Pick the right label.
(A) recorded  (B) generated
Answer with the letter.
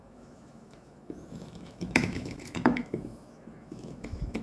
B